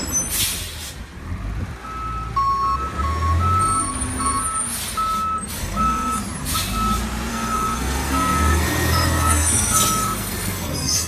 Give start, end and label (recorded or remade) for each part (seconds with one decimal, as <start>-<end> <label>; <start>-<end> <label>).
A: 0.0-5.5 recorded; 5.5-6.2 remade; 6.2-7.3 recorded; 7.3-11.1 remade